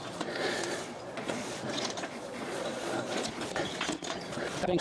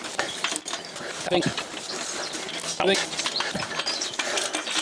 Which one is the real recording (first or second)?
second